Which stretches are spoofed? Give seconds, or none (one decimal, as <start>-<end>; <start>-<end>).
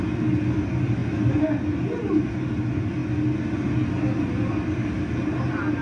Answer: none